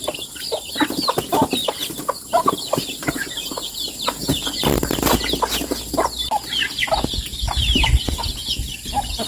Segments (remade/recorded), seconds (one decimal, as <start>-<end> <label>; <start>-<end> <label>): 0.0-9.3 recorded